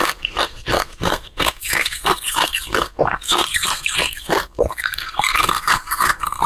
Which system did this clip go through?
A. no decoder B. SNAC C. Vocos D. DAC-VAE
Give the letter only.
B